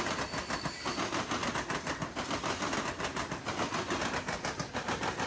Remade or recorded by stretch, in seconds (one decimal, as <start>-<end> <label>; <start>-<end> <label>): 0.0-5.3 recorded